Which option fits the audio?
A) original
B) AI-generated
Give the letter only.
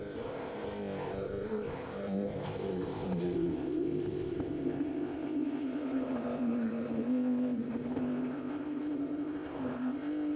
B